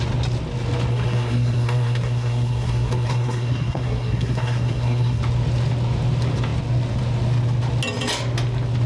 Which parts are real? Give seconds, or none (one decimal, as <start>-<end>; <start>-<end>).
0.0-0.9; 5.2-8.9